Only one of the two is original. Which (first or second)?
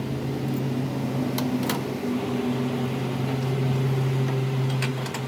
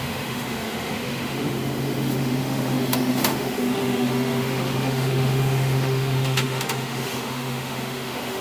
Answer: first